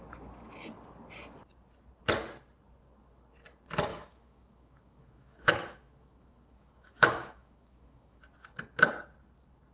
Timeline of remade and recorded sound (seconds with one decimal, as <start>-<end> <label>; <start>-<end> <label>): 0.0-3.9 recorded; 3.9-8.2 remade; 8.2-9.7 recorded